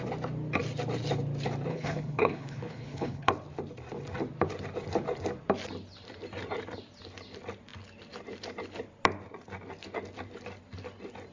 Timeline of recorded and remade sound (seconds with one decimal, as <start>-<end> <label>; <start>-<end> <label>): 0.0-1.7 recorded; 1.7-3.3 remade; 3.3-11.3 recorded